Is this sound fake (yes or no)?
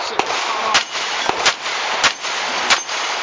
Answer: no